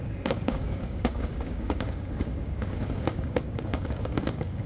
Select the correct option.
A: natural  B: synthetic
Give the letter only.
B